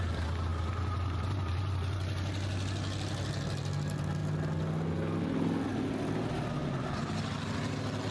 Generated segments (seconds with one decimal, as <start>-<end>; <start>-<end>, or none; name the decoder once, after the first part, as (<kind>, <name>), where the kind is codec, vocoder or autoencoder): none